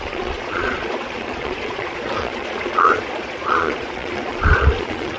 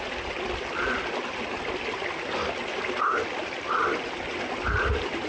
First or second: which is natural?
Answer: second